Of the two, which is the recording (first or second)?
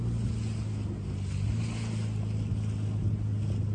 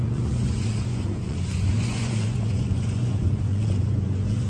first